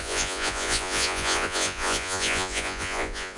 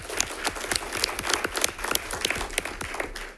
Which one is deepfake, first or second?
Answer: first